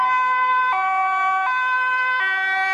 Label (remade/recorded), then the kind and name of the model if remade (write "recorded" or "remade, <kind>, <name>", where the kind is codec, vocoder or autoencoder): recorded